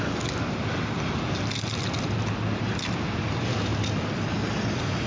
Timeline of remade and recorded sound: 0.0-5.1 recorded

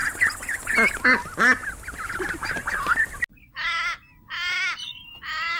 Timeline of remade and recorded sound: 0.0-1.7 recorded; 1.7-2.6 remade; 2.6-4.9 recorded; 4.9-5.6 remade

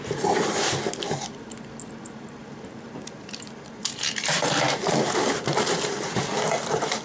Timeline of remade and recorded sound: 0.0-2.4 recorded; 2.4-6.1 remade; 6.1-7.0 recorded

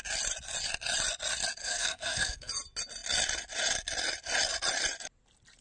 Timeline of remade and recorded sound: 0.0-1.6 recorded; 1.6-2.5 remade; 2.5-5.6 recorded

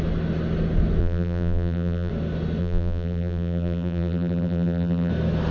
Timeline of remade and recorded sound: 0.0-1.0 recorded; 1.0-2.1 remade; 2.1-2.6 recorded; 2.6-5.1 remade; 5.1-5.5 recorded

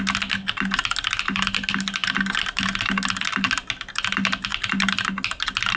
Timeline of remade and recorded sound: 0.0-5.8 recorded